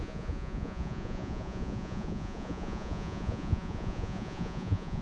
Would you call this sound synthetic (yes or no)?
yes